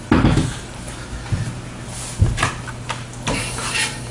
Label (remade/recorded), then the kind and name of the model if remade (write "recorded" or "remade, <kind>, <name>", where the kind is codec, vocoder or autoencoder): recorded